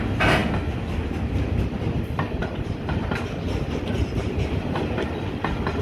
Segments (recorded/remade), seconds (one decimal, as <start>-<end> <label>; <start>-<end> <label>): 0.0-5.8 recorded